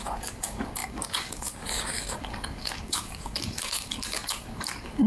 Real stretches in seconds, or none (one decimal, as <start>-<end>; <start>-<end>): none